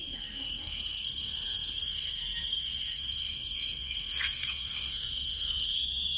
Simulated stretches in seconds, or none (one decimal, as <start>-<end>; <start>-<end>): 0.0-6.2